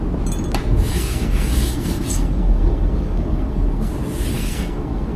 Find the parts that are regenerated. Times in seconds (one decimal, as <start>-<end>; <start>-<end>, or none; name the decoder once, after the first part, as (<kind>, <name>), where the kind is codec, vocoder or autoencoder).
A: 0.9-3.9 (codec, SNAC); 4.3-5.2